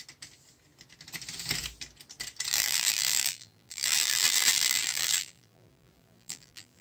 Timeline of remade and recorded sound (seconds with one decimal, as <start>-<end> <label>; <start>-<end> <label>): 0.0-2.5 recorded; 2.5-6.8 remade